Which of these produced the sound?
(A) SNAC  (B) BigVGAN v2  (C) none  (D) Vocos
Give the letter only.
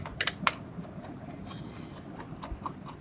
C